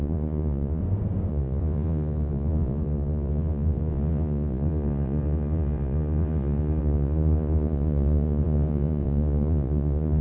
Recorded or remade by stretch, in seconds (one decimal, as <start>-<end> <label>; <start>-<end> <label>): 0.0-0.8 remade; 0.8-1.3 recorded; 1.3-10.2 remade